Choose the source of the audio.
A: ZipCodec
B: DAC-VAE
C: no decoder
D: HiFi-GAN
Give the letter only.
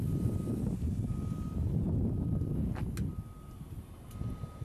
C